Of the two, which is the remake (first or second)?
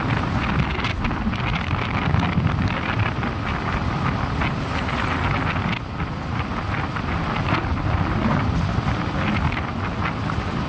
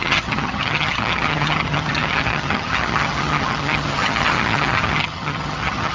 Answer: second